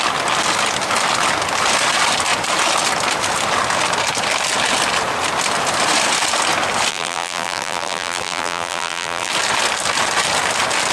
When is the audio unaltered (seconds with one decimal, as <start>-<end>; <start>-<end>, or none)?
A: 0.0-6.9; 9.3-10.9